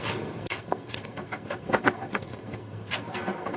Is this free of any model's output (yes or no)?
no